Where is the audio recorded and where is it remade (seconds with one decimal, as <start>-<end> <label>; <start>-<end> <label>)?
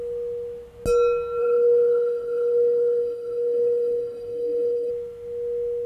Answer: 0.0-1.4 recorded; 1.4-4.9 remade; 4.9-5.9 recorded